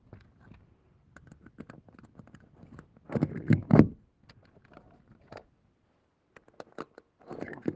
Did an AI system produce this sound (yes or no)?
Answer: no